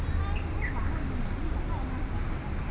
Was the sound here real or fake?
real